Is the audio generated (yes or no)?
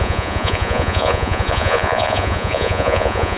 yes